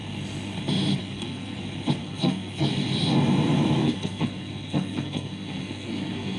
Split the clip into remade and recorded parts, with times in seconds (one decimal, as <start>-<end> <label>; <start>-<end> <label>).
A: 0.0-1.0 recorded; 1.0-1.6 remade; 1.6-2.0 recorded; 2.0-2.7 remade; 2.7-3.8 recorded; 3.8-6.4 remade